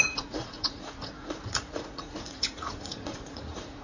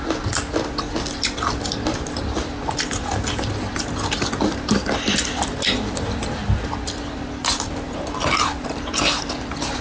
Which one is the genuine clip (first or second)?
second